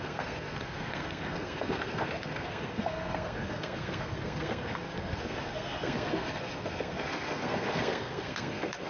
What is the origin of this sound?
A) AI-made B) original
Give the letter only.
A